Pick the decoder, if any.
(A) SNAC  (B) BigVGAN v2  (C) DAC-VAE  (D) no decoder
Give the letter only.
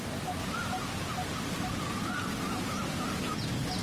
B